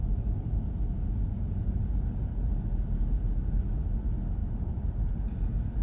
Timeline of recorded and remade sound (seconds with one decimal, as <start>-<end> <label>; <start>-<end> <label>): 0.0-4.4 recorded; 4.4-5.3 remade; 5.3-5.8 recorded

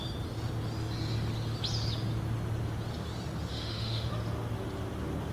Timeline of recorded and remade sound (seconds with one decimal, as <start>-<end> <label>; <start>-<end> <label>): 0.0-3.5 recorded; 3.5-4.1 remade; 4.1-5.3 recorded

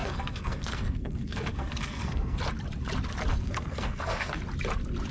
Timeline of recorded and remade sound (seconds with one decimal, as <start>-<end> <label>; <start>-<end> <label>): 0.0-2.4 remade; 2.4-3.3 recorded; 3.3-4.4 remade; 4.4-5.1 recorded

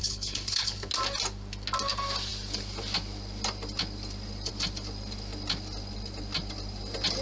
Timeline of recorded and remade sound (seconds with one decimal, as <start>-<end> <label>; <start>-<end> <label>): 0.0-0.9 remade; 0.9-7.2 recorded

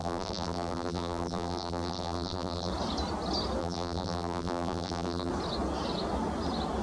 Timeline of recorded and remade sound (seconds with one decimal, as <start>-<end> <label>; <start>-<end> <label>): 0.0-2.7 remade; 2.7-3.6 recorded; 3.6-5.3 remade; 5.3-6.8 recorded

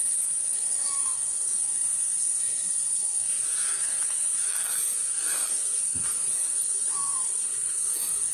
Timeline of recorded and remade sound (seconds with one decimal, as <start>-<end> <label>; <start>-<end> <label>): 0.0-8.3 remade

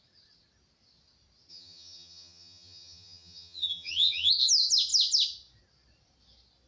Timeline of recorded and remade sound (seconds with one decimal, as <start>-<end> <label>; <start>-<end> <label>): 0.0-1.5 recorded; 1.5-4.3 remade; 4.3-6.7 recorded